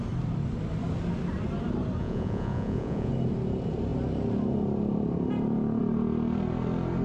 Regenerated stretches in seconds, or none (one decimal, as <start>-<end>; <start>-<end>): 2.0-3.1